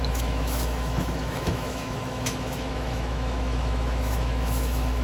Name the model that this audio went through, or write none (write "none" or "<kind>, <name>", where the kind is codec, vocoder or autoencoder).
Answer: autoencoder, DAC-VAE